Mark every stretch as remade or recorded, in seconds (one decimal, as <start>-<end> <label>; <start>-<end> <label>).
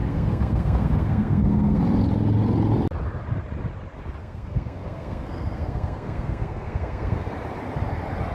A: 0.0-1.8 remade; 1.8-4.2 recorded; 4.2-7.3 remade; 7.3-8.3 recorded